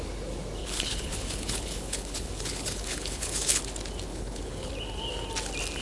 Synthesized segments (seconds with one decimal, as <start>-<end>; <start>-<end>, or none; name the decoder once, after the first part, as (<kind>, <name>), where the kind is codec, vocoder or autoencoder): 0.6-3.6 (codec, HILCodec); 4.1-4.7